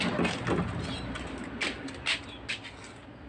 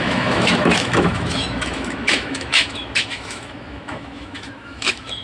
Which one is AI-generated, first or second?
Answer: second